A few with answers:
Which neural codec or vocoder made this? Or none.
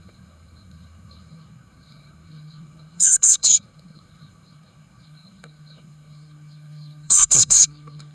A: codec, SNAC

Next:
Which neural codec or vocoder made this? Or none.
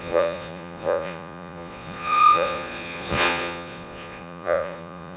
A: vocoder, Vocos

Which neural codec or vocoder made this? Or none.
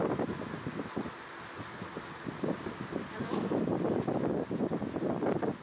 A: none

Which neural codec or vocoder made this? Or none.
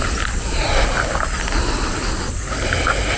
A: none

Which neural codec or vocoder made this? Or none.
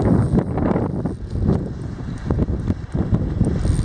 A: none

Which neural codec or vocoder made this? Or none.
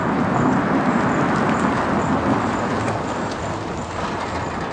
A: none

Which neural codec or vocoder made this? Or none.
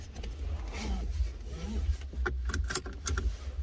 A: none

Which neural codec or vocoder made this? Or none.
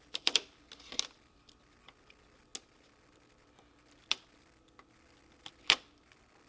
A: none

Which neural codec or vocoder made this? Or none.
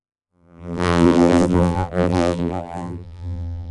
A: vocoder, BigVGAN v2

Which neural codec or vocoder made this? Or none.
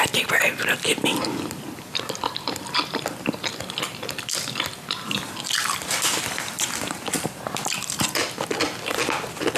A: vocoder, BigVGAN v2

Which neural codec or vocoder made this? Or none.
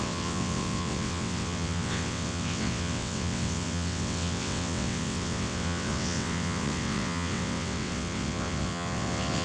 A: vocoder, WaveNeXt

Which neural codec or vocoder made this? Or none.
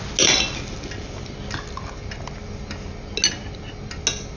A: none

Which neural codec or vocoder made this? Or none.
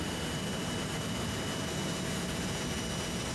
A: none